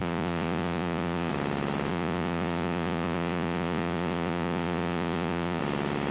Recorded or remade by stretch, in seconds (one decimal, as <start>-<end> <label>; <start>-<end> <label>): 0.0-1.3 remade; 1.3-1.9 recorded; 1.9-5.6 remade; 5.6-6.1 recorded